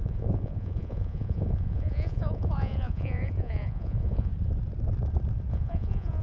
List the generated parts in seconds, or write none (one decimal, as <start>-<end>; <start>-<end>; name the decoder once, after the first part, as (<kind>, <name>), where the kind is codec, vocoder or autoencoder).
0.0-4.3 (vocoder, Vocos); 5.5-6.2